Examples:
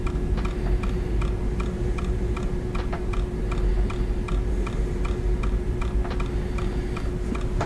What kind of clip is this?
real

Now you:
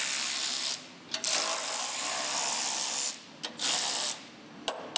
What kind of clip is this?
real